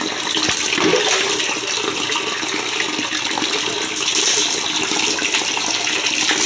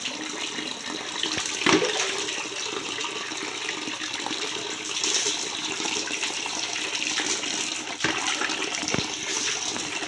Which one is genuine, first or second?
first